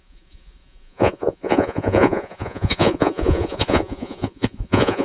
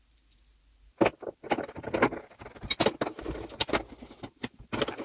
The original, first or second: second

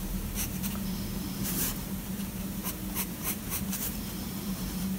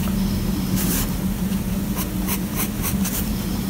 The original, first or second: second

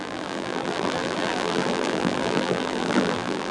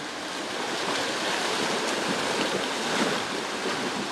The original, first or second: second